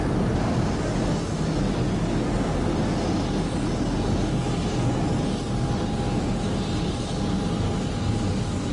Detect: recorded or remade recorded